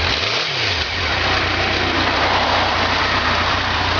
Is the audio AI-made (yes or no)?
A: no